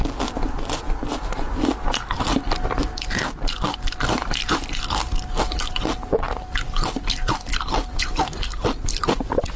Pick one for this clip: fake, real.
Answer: real